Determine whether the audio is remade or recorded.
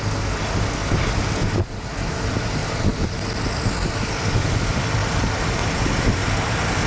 recorded